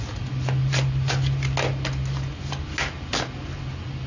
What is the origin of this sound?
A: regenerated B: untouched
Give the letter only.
B